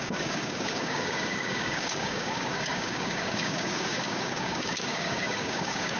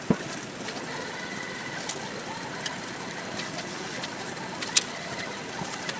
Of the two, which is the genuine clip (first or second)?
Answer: second